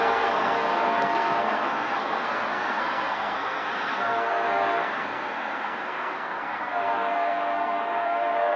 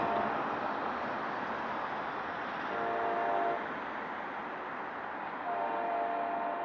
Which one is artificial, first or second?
first